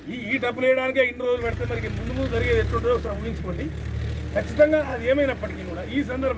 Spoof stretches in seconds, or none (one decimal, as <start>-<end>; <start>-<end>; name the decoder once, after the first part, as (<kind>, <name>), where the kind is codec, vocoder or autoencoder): none